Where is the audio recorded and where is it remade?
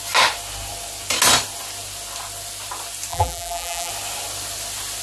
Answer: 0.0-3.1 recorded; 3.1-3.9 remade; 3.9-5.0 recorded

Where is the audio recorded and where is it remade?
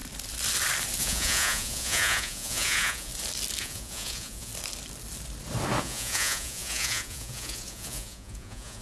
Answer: 0.0-1.0 recorded; 1.0-3.1 remade; 3.1-3.6 recorded; 3.6-4.5 remade; 4.5-5.8 recorded; 5.8-8.8 remade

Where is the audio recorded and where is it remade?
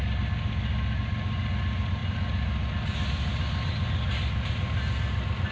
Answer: 0.0-5.5 recorded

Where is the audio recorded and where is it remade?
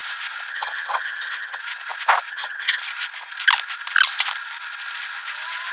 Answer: 0.0-0.5 recorded; 0.5-1.6 remade; 1.6-2.3 recorded; 2.3-2.8 remade; 2.8-5.7 recorded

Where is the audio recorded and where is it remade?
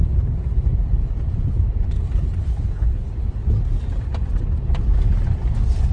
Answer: 0.0-2.4 recorded; 2.4-3.1 remade; 3.1-5.9 recorded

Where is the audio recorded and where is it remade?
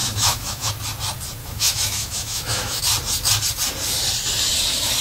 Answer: 0.0-0.7 remade; 0.7-1.4 recorded; 1.4-2.8 remade; 2.8-5.0 recorded